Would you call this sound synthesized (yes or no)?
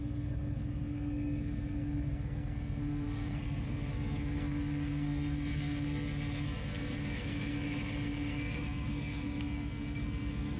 yes